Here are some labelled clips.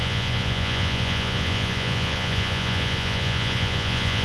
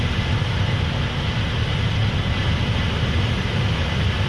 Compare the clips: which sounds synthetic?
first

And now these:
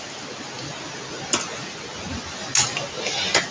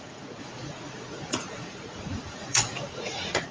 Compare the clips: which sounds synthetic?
second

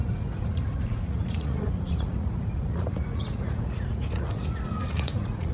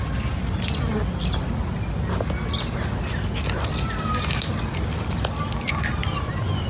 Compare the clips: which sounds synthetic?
first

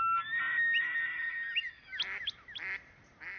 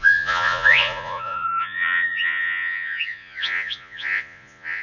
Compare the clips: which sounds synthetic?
second